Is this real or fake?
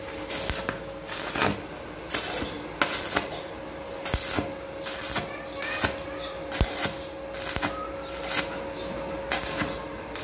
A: real